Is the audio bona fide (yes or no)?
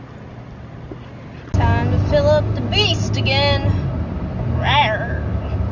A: yes